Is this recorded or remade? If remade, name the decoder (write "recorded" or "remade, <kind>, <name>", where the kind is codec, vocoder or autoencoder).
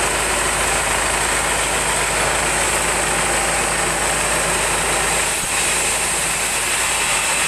recorded